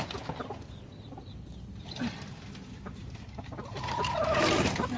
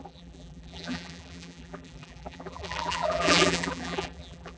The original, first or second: first